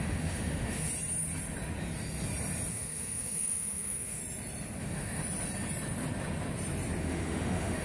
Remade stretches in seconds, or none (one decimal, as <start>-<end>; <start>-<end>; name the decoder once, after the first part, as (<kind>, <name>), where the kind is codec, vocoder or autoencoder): 0.0-0.9 (autoencoder, DAC-VAE); 2.7-4.2; 4.8-5.2; 7.0-7.8